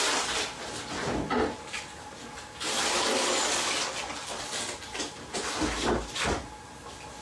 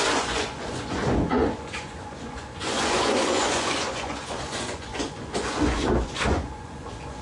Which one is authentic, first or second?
first